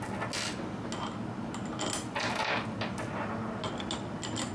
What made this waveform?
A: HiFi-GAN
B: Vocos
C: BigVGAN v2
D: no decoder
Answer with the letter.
D